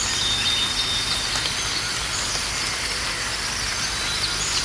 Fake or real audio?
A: real